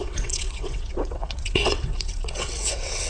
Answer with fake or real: fake